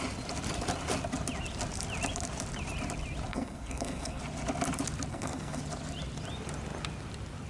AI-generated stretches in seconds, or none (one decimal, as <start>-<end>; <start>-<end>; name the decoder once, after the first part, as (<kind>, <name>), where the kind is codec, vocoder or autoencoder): 3.3-4.2 (codec, SNAC); 5.1-5.6

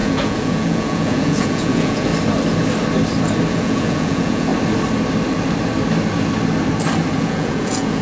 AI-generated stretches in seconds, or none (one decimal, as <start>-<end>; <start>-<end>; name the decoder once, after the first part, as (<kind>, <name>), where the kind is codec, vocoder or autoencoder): 0.0-2.1 (vocoder, Vocos); 3.5-4.5; 7.2-8.0